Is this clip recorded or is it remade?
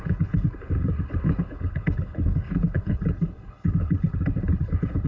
remade